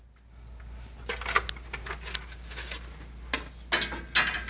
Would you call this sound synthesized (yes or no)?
no